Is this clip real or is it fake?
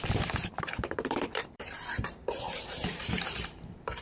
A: fake